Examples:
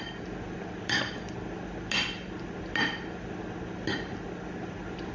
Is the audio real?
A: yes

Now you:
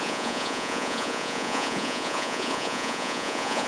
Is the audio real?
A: no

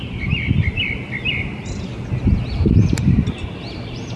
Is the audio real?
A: yes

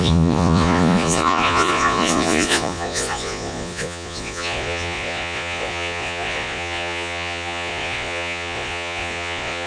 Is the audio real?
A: no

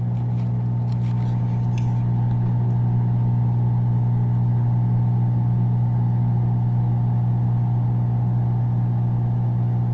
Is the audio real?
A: yes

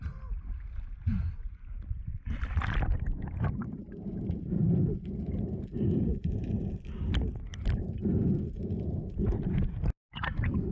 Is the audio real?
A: yes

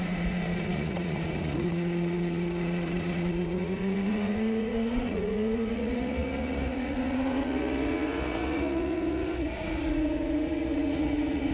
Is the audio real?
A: no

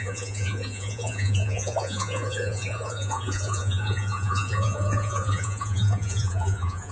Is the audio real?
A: no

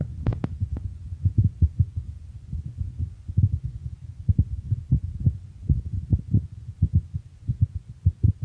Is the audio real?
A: no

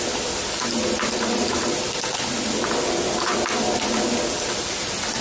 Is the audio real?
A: yes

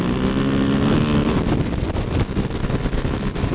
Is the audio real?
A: yes